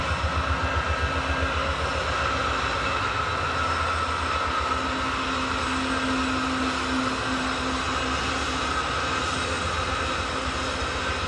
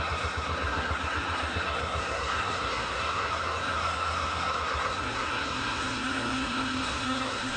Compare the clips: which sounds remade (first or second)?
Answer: second